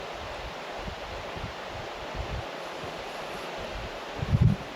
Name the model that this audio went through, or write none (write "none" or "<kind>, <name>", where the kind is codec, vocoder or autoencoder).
none